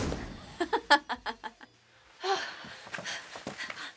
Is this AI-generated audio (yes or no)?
no